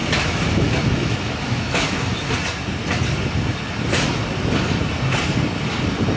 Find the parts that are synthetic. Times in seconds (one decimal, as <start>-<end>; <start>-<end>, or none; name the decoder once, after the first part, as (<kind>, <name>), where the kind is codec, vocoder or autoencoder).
0.0-2.3 (autoencoder, DAC-VAE)